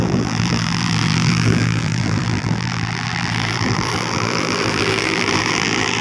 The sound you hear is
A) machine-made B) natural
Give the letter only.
A